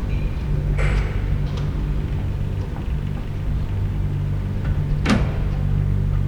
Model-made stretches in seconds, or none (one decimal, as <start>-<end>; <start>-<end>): 0.0-2.2